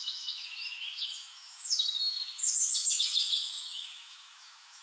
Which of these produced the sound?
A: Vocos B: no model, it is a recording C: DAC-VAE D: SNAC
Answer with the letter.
C